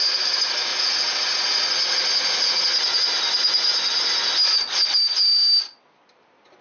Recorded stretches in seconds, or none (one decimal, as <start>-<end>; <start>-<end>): 0.0-6.6

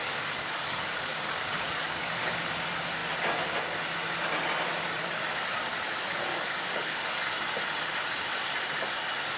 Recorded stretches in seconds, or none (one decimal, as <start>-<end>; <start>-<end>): 2.4-6.3; 7.2-9.4

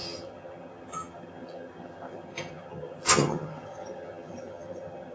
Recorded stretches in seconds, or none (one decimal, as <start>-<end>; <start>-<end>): none

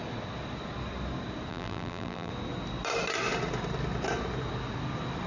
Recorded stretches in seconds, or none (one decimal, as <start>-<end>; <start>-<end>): 0.0-1.5; 2.3-5.3

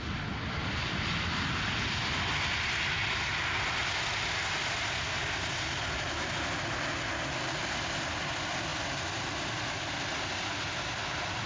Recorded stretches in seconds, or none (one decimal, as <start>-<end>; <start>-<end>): 0.0-11.5

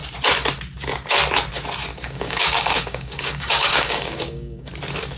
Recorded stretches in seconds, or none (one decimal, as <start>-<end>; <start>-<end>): 0.0-1.9; 4.7-5.2